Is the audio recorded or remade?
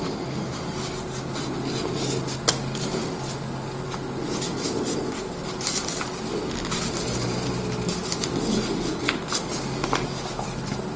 recorded